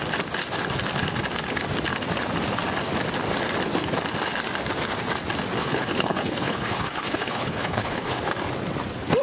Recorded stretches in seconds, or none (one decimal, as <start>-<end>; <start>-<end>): 0.0-5.6; 8.2-9.2